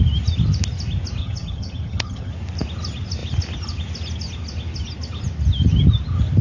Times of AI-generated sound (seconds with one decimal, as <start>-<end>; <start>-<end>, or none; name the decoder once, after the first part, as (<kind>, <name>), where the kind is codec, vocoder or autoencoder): 1.2-2.3 (vocoder, HiFi-GAN)